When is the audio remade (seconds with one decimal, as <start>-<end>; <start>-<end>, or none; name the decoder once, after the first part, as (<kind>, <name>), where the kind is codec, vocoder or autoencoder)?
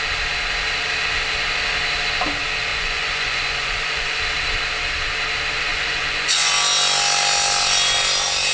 2.7-4.2 (vocoder, Vocos); 5.7-6.5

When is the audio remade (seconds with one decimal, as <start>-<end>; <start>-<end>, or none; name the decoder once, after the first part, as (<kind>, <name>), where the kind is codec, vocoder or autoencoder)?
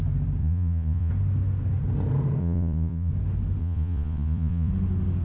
0.4-1.1 (vocoder, Vocos); 2.4-3.1; 3.6-4.7